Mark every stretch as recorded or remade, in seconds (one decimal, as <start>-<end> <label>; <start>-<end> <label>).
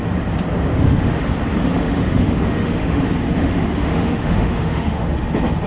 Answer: 0.0-0.7 recorded; 0.7-1.2 remade; 1.2-1.7 recorded; 1.7-3.0 remade; 3.0-3.4 recorded; 3.4-5.1 remade; 5.1-5.7 recorded